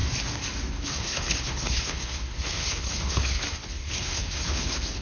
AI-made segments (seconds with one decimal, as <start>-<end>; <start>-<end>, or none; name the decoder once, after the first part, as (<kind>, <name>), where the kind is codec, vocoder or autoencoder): 0.7-5.0 (codec, HILCodec)